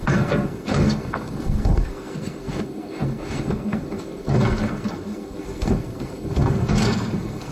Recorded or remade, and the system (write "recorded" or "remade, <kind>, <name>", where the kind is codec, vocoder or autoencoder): remade, codec, SNAC